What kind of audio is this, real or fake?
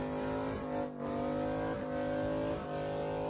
real